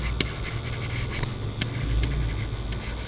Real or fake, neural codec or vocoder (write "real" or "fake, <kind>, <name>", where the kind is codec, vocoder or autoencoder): real